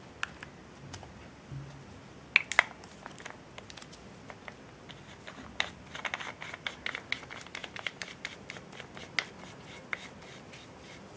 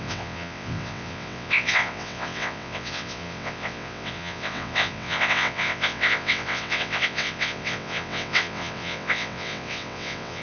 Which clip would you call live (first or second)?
first